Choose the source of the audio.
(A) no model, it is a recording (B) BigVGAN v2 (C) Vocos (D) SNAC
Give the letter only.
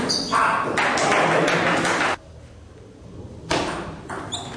A